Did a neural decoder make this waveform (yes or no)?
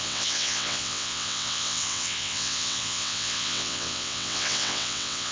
yes